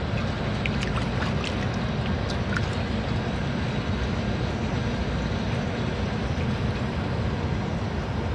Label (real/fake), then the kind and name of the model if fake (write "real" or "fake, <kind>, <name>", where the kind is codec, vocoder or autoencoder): real